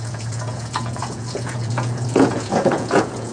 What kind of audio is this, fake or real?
fake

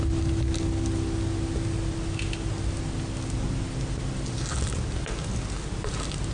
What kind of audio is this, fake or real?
real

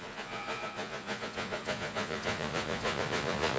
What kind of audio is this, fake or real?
fake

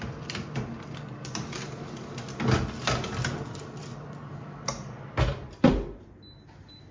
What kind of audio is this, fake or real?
real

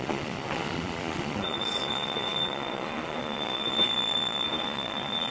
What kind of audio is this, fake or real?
fake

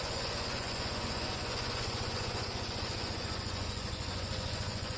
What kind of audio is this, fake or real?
fake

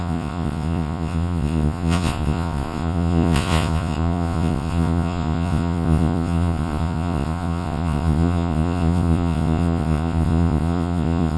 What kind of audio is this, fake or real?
fake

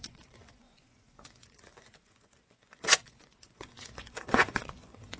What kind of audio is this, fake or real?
fake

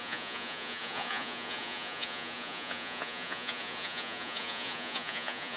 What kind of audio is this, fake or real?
fake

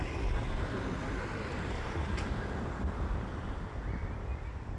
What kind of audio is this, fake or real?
real